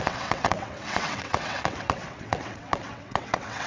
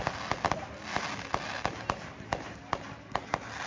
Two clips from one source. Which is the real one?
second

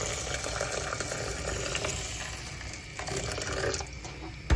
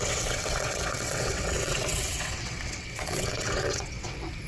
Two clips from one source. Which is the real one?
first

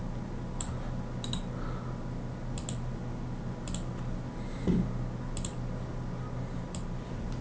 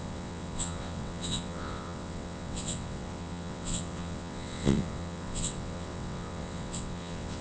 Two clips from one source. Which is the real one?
first